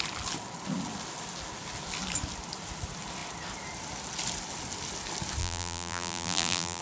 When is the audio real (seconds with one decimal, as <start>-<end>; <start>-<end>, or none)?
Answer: 0.0-5.4